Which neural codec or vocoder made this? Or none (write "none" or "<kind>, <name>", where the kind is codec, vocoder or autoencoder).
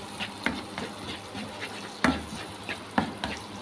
none